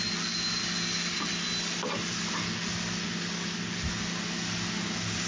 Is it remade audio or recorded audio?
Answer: recorded